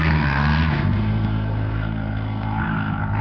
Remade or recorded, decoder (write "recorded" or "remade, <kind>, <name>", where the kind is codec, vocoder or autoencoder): remade, codec, SNAC